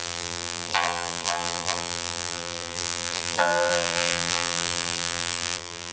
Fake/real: fake